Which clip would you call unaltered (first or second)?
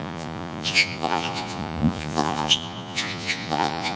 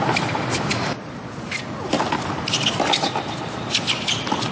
second